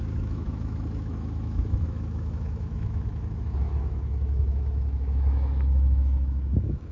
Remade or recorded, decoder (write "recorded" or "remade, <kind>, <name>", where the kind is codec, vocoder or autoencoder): remade, autoencoder, DAC-VAE